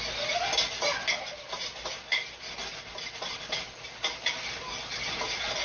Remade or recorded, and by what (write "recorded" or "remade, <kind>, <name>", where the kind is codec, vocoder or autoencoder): recorded